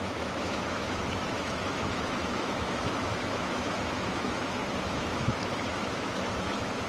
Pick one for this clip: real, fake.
fake